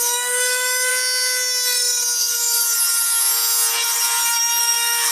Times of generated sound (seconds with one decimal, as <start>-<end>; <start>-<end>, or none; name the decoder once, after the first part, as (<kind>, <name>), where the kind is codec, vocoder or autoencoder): 0.0-0.9 (codec, DAC); 2.2-2.7; 4.6-5.1